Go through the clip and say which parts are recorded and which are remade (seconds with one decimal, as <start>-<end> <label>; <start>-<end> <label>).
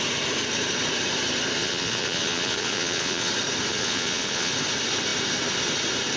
0.0-1.6 recorded; 1.6-3.3 remade; 3.3-3.7 recorded; 3.7-4.5 remade; 4.5-6.2 recorded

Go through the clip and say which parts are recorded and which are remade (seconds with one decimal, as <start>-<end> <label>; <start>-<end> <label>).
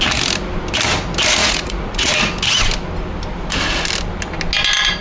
0.0-1.4 recorded; 1.4-2.1 remade; 2.1-5.0 recorded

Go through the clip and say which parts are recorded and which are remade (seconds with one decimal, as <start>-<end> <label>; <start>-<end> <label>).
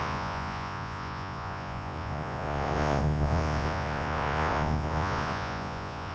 0.0-6.1 remade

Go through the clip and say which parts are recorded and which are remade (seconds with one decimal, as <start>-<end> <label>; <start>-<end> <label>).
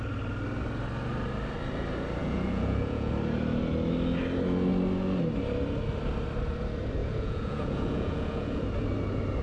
0.0-2.2 recorded; 2.2-3.1 remade; 3.1-7.0 recorded; 7.0-8.6 remade; 8.6-9.4 recorded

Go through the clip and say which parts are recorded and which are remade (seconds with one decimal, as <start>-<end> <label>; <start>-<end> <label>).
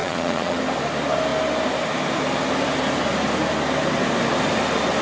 0.0-0.6 remade; 0.6-5.0 recorded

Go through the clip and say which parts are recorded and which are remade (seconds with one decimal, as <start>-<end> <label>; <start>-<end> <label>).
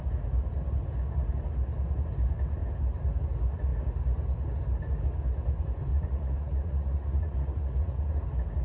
0.0-5.9 recorded; 5.9-8.2 remade; 8.2-8.6 recorded